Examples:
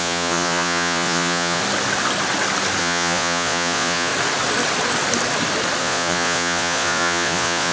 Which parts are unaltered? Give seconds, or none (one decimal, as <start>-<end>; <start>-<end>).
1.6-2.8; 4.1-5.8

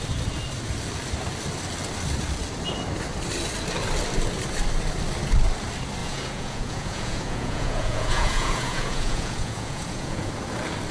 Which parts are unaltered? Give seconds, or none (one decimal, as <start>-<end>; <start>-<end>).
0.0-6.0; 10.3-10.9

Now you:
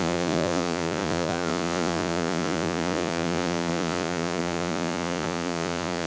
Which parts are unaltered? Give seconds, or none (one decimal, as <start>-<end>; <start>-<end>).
none